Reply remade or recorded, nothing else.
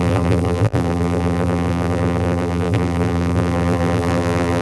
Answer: remade